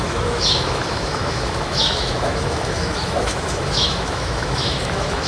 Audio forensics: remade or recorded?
remade